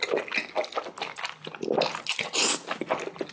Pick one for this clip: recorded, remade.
recorded